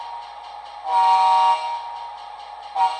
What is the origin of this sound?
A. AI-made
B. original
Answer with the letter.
B